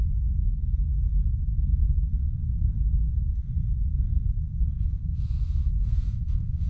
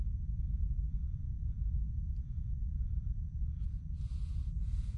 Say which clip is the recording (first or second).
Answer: second